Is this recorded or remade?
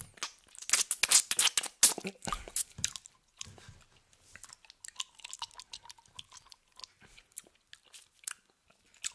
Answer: recorded